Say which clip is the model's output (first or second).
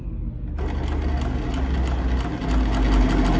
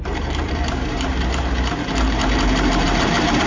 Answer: second